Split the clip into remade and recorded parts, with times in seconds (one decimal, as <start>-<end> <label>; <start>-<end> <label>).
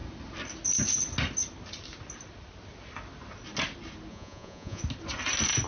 0.0-4.1 recorded; 4.1-4.8 remade; 4.8-5.7 recorded